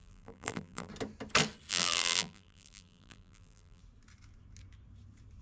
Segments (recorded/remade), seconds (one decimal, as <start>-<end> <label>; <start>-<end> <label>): 0.0-0.9 remade; 0.9-1.7 recorded; 1.7-3.8 remade; 3.8-5.4 recorded

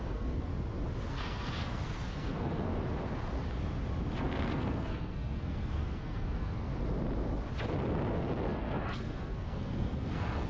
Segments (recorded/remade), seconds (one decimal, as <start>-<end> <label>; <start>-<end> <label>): 0.0-0.5 remade; 0.5-1.1 recorded; 1.1-2.7 remade; 2.7-4.2 recorded; 4.2-6.7 remade; 6.7-8.1 recorded; 8.1-10.5 remade

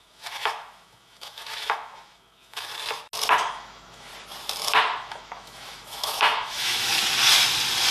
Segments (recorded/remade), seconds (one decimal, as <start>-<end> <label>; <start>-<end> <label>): 0.0-2.7 remade; 2.7-3.5 recorded; 3.5-4.1 remade; 4.1-5.0 recorded; 5.0-6.9 remade; 6.9-7.9 recorded

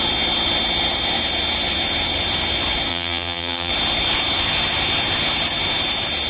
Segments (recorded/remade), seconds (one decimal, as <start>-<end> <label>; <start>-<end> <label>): 0.0-2.9 recorded; 2.9-3.7 remade; 3.7-6.3 recorded